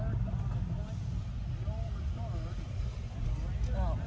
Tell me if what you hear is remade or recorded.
recorded